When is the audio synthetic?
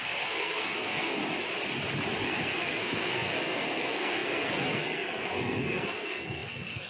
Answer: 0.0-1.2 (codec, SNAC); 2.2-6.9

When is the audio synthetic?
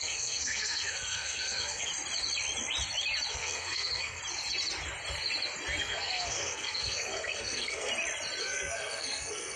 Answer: 0.0-1.9 (codec, SNAC); 3.3-4.2; 5.8-7.9; 8.4-9.6